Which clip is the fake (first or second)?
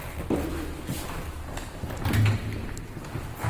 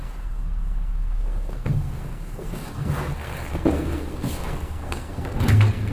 second